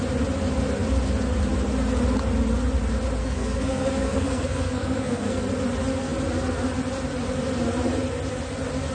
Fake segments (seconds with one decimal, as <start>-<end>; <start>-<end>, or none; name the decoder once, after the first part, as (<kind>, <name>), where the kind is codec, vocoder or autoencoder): 3.2-5.4 (codec, SNAC)